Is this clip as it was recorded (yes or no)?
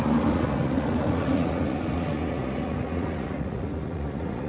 no